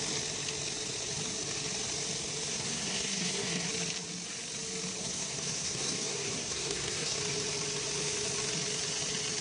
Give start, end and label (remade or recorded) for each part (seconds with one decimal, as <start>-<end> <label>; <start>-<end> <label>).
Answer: 0.0-2.5 recorded; 2.5-3.7 remade; 3.7-5.0 recorded; 5.0-7.2 remade; 7.2-9.4 recorded